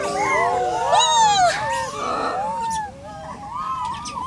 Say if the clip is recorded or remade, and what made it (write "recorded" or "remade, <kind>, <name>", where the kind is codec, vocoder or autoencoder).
recorded